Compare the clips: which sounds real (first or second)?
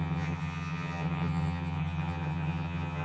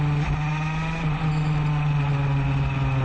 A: second